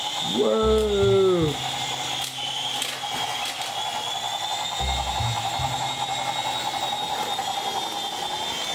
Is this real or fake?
real